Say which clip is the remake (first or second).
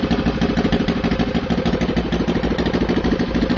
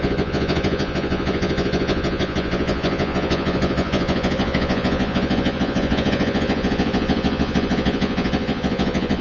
second